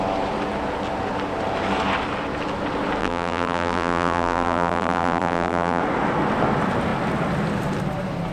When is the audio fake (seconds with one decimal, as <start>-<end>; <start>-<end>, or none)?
3.0-5.8